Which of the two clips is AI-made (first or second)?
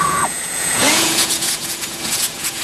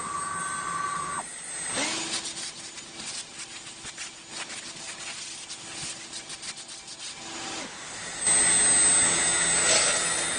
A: first